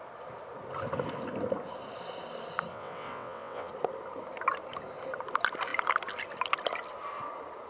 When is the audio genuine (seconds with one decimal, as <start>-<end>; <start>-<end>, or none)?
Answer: 0.0-2.7; 3.7-7.7